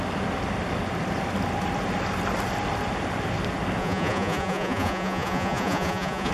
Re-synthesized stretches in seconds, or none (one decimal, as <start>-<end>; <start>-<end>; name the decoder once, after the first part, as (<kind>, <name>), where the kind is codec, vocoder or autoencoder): 3.8-6.3 (vocoder, Vocos)